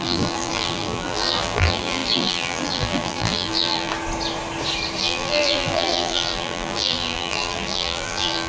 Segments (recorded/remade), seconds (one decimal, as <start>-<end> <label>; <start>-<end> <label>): 0.0-3.9 remade; 3.9-5.0 recorded; 5.0-8.5 remade